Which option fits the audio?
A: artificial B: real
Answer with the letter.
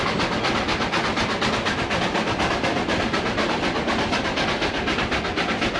B